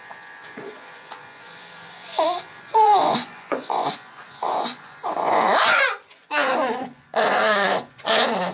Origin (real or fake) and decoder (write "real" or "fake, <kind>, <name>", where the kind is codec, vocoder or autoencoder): fake, vocoder, Vocos